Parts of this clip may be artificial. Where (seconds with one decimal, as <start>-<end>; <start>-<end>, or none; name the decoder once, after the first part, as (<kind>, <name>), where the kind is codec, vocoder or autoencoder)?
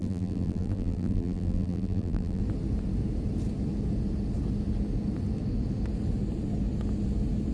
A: 0.0-2.4 (vocoder, BigVGAN v2)